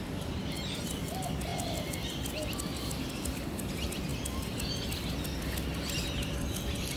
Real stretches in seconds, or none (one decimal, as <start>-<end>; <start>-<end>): 0.0-7.0

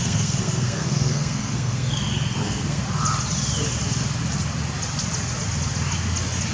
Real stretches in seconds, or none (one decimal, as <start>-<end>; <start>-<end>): 2.8-6.5

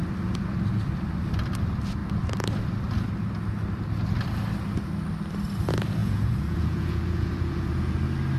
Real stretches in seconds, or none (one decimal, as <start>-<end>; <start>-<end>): 0.0-6.0; 7.9-8.4

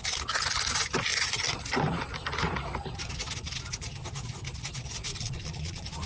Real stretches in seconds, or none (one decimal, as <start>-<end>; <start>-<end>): 0.0-5.1

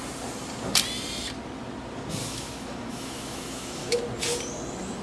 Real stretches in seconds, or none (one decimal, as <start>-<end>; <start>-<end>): 0.0-2.2; 4.0-5.0

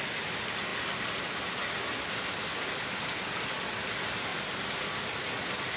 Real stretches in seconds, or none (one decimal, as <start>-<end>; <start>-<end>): 0.0-5.8

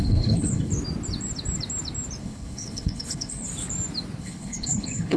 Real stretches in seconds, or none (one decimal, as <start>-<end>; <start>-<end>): 0.7-2.2; 3.5-4.2

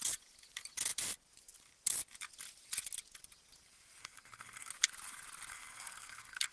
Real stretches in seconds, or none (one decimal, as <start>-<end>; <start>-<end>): 0.0-4.0; 4.7-5.5